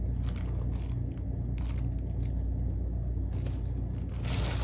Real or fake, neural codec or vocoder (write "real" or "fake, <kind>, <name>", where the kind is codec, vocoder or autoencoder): real